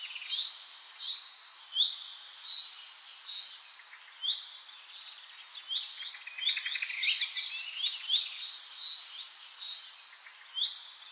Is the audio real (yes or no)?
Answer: yes